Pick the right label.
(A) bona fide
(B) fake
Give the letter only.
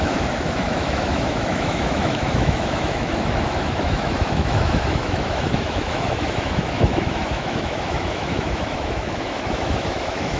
B